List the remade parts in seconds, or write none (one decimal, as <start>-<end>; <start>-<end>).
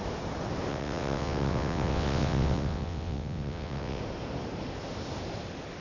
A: 0.7-4.0